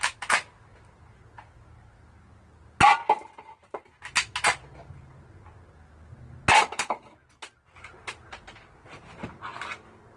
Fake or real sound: real